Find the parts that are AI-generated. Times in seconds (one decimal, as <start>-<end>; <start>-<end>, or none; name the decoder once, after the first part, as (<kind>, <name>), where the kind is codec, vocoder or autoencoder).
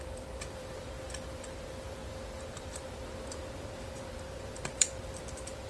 0.0-5.7 (vocoder, BigVGAN v2)